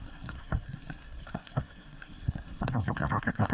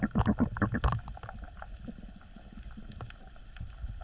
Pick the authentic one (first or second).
second